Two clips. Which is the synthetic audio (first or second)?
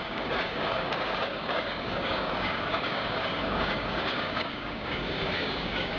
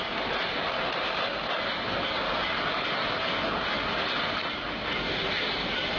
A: first